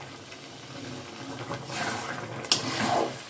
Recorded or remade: recorded